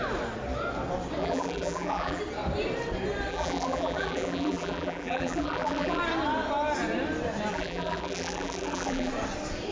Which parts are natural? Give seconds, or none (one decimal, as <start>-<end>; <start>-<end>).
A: 0.0-1.2; 2.2-3.3; 6.0-7.5; 9.1-9.7

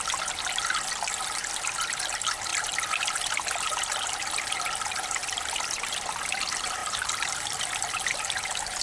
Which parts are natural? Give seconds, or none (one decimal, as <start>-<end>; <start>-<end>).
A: 0.0-6.8; 7.6-8.8

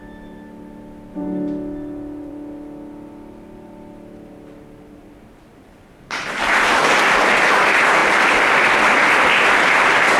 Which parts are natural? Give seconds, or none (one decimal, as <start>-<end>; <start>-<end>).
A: 0.0-5.5; 6.7-10.2

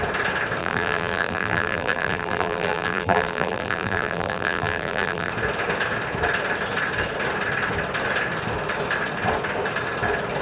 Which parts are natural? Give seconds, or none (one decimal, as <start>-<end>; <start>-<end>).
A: 0.0-0.6; 5.3-10.4

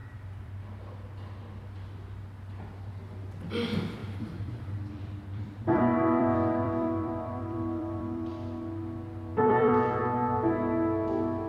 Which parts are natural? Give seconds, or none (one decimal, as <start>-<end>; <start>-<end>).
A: 0.6-4.0; 8.3-9.3; 10.0-11.5